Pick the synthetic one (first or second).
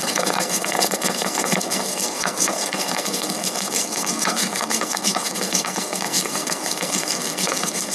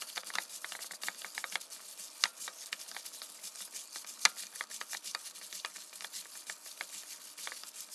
first